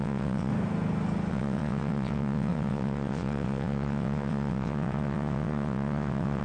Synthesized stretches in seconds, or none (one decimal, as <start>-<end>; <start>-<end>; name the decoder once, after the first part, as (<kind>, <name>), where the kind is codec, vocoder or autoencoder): 0.0-0.5 (vocoder, WaveNeXt); 1.3-6.4